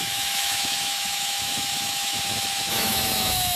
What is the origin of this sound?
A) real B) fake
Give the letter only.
B